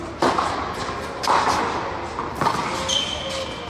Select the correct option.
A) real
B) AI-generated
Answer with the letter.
A